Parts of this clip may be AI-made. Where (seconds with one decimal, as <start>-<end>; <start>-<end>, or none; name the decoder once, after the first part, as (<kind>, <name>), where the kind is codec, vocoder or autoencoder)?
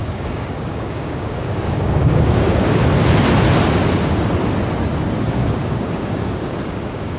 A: 0.0-2.8 (codec, DAC); 5.2-7.2